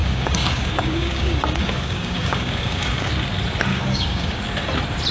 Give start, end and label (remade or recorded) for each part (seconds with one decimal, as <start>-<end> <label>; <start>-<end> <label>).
0.0-3.1 remade; 3.1-3.7 recorded; 3.7-4.4 remade; 4.4-5.1 recorded